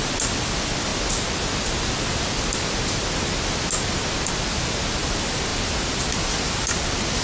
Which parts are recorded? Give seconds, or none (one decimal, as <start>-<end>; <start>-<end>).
0.0-7.2